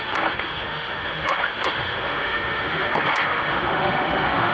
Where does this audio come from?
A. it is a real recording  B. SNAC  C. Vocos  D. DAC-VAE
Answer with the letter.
D